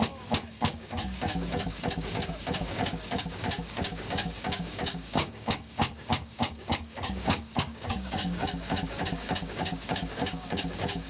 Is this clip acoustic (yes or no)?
no